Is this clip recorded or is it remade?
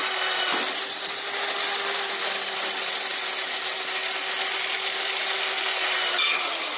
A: recorded